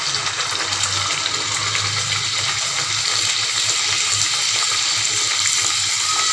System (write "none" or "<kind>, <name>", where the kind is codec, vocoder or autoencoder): none